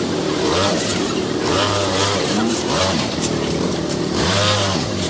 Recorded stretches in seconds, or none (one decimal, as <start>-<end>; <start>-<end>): none